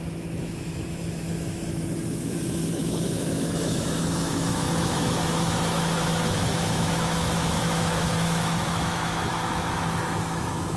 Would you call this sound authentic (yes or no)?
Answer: no